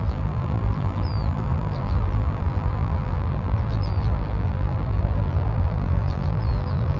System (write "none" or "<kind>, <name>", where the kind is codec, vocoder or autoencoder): vocoder, BigVGAN v2